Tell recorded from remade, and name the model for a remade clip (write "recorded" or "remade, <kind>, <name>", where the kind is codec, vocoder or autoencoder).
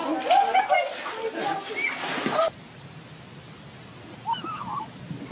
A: recorded